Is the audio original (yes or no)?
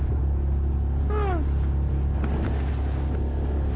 yes